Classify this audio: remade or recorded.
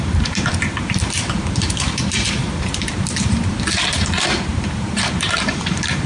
remade